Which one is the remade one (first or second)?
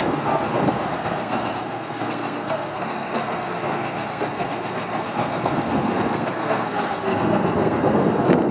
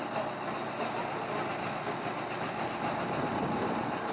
first